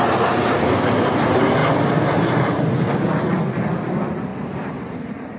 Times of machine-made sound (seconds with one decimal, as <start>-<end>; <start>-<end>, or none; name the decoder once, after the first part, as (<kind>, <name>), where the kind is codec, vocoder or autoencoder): none